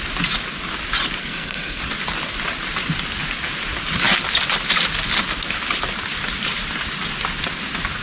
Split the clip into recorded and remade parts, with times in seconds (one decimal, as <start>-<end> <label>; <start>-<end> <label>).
0.0-1.2 recorded; 1.2-1.8 remade; 1.8-8.0 recorded